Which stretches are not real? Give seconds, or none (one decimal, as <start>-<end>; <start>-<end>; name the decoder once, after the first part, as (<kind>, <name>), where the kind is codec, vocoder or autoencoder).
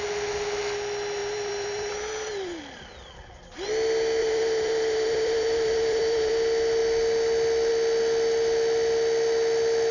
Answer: 1.2-2.6 (vocoder, BigVGAN v2); 4.2-6.3